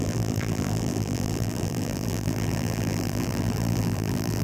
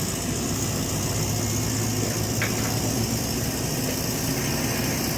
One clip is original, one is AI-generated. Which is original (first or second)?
second